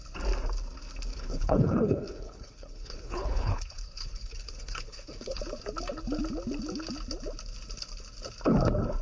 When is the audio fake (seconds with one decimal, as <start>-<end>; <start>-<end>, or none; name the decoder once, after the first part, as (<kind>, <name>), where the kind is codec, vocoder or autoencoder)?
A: 1.1-5.4 (codec, HILCodec)